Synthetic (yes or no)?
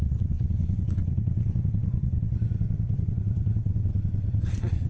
yes